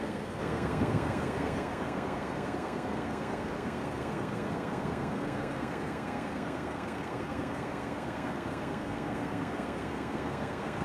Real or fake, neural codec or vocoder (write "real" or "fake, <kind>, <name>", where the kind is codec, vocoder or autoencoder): fake, codec, SNAC